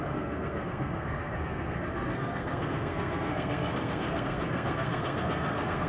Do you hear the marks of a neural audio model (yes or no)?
yes